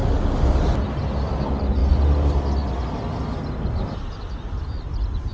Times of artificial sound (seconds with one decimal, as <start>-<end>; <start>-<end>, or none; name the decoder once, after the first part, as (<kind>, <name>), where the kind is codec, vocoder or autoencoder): none